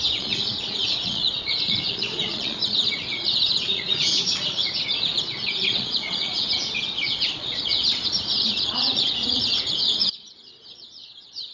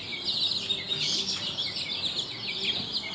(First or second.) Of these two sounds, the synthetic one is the first